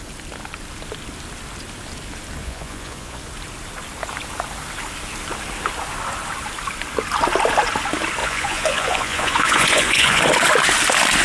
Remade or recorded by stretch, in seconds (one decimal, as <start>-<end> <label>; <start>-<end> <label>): 0.0-2.4 recorded; 2.4-3.2 remade; 3.2-8.2 recorded; 8.2-10.2 remade; 10.2-11.2 recorded